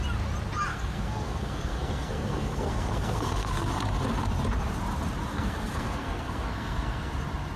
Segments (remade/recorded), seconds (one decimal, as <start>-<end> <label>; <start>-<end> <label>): 0.0-0.7 recorded; 0.7-3.7 remade; 3.7-5.3 recorded; 5.3-7.1 remade; 7.1-7.6 recorded